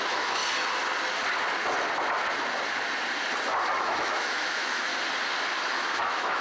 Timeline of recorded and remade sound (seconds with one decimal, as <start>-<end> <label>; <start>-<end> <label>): 0.0-0.4 remade; 0.4-3.8 recorded; 3.8-4.9 remade; 4.9-5.6 recorded; 5.6-6.4 remade